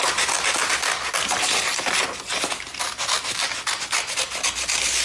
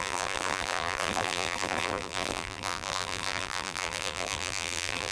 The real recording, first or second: first